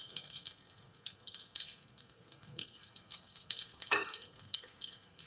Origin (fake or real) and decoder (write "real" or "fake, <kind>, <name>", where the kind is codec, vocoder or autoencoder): fake, codec, SNAC